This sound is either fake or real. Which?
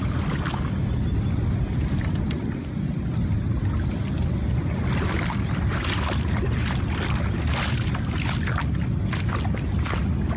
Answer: real